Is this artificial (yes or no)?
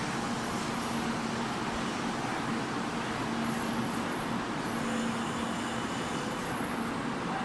no